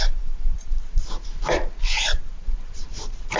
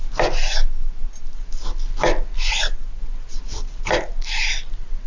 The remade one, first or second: first